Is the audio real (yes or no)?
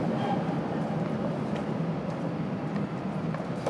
no